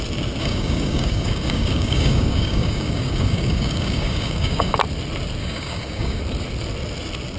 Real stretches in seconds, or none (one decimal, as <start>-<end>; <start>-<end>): 0.0-0.4; 4.8-5.4; 6.2-7.4